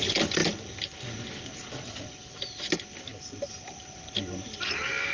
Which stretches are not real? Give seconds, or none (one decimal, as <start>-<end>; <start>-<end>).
none